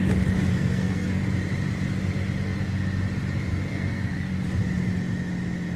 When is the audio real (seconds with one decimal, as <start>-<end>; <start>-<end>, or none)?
0.0-0.5; 1.2-3.5; 4.3-5.8